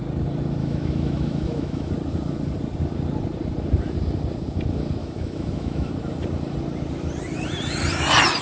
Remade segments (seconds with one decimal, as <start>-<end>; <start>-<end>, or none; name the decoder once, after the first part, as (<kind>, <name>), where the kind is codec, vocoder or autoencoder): 0.6-1.9 (autoencoder, DAC-VAE); 5.0-5.9